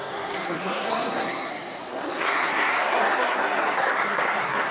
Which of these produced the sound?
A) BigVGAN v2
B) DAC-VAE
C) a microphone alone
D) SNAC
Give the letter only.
D